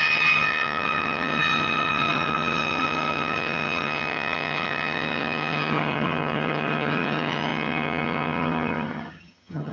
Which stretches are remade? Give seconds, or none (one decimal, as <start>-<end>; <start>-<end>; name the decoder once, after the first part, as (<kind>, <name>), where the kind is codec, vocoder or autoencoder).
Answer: 0.0-9.7 (vocoder, HiFi-GAN)